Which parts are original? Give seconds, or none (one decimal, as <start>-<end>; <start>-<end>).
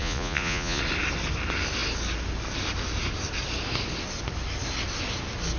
0.8-5.6